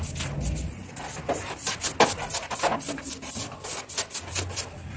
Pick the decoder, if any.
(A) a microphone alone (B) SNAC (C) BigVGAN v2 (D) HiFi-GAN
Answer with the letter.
A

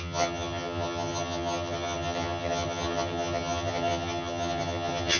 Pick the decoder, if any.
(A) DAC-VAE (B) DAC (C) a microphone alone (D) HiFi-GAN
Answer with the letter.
D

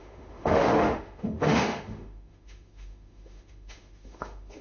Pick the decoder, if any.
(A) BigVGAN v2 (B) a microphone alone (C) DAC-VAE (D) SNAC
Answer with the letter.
C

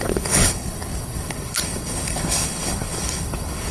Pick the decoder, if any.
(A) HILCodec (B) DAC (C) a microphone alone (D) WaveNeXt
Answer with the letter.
A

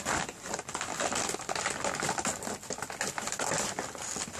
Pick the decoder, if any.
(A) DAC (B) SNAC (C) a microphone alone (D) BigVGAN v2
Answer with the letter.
C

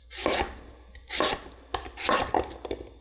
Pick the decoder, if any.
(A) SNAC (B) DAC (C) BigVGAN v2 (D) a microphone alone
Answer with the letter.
D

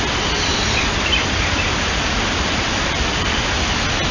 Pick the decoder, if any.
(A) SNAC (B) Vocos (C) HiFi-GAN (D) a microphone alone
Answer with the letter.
D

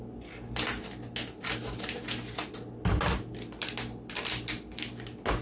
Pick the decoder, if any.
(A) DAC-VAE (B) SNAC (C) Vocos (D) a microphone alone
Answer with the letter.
D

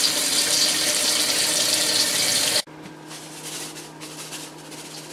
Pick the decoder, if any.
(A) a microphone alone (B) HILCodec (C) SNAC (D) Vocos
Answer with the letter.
A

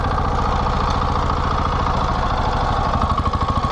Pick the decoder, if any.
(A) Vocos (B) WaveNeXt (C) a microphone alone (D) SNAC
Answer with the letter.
C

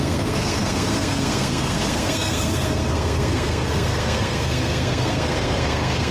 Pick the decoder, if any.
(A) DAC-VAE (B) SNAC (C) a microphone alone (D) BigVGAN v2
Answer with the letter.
B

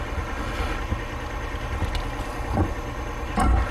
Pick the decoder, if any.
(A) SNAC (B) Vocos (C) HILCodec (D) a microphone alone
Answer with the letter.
D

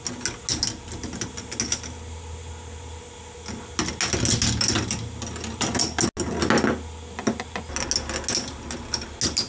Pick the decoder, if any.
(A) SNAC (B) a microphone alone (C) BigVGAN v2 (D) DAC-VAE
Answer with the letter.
B